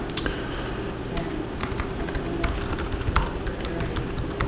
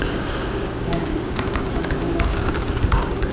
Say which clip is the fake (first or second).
second